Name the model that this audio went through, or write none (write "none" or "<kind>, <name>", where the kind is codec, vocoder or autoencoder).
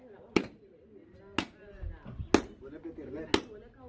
none